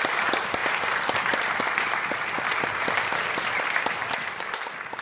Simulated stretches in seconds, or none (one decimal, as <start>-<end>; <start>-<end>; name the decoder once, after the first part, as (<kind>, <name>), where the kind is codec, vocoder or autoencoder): none